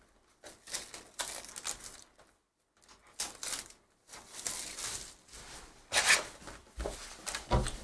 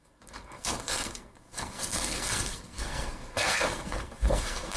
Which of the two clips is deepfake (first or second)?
second